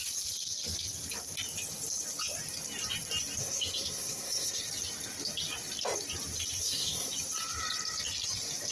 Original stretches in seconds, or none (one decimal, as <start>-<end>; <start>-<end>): 0.0-3.4; 4.6-6.6; 7.1-8.7